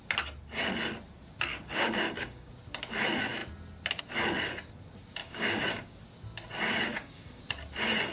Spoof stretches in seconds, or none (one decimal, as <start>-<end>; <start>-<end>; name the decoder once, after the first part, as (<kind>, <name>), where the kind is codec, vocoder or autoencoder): 1.5-2.5 (codec, DAC); 5.2-6.0; 6.9-7.4